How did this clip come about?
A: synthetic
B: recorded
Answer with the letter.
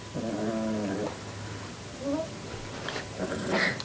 B